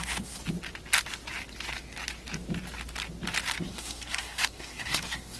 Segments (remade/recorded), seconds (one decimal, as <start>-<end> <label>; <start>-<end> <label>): 0.0-0.4 remade; 0.4-3.6 recorded; 3.6-5.4 remade